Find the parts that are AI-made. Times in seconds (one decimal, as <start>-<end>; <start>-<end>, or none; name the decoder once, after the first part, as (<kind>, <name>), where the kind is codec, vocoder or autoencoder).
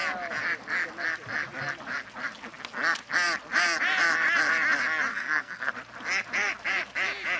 5.1-5.7 (codec, SNAC)